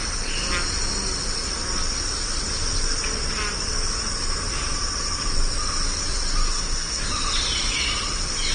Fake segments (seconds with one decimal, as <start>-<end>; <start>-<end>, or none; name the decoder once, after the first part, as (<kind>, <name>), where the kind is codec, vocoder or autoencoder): 6.5-7.0 (codec, SNAC)